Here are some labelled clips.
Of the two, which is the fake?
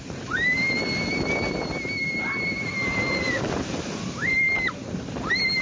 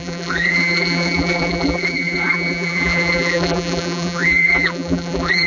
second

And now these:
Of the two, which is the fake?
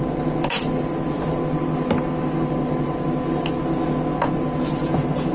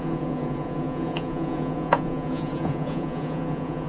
second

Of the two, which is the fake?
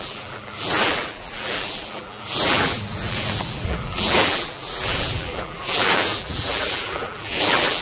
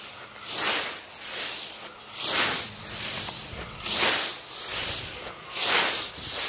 first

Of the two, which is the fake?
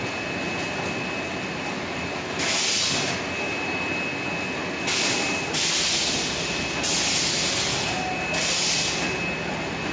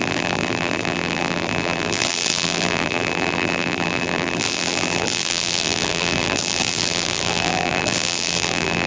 second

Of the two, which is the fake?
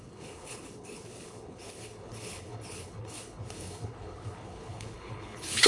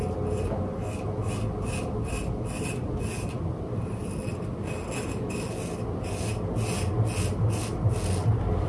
first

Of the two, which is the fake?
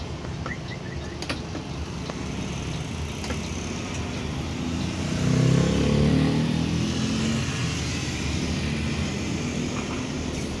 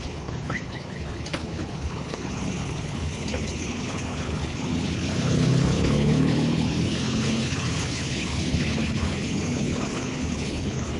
second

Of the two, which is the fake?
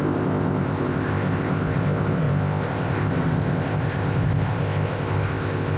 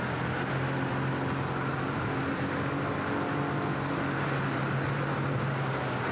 first